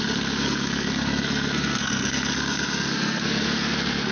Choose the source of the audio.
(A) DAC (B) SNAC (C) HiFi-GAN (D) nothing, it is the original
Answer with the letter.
B